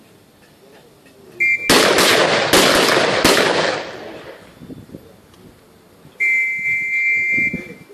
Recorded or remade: recorded